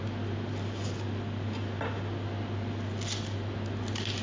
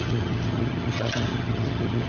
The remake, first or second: second